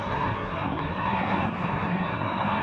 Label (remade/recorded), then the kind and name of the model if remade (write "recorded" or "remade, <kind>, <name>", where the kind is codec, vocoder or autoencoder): remade, codec, SNAC